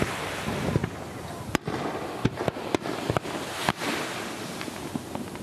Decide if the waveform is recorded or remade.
recorded